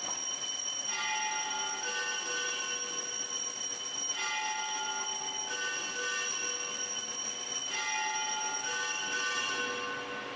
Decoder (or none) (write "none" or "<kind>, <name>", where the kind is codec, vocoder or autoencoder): none